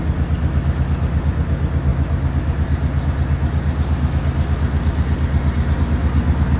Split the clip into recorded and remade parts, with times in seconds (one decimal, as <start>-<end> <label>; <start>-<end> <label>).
0.0-6.6 recorded